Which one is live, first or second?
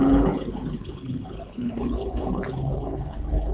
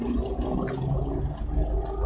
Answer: second